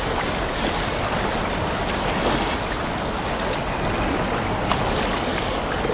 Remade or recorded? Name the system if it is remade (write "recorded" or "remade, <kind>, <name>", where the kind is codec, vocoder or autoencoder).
recorded